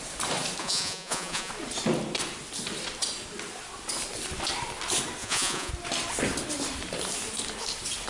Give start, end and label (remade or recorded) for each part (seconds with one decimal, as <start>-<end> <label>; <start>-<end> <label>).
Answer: 0.0-0.6 recorded; 0.6-1.5 remade; 1.5-5.2 recorded; 5.2-5.7 remade; 5.7-8.1 recorded